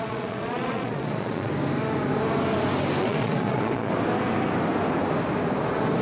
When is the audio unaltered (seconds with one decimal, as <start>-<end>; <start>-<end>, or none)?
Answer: 1.5-3.0; 3.9-6.0

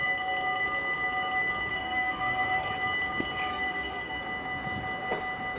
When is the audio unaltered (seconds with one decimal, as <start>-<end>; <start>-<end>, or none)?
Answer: 0.0-1.7; 2.7-3.5; 4.2-5.6

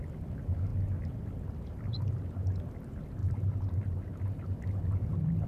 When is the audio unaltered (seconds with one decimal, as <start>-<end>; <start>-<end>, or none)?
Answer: 0.0-3.2; 4.6-5.5

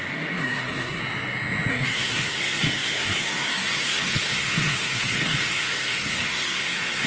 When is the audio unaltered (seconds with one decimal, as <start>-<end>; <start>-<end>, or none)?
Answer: 1.0-1.7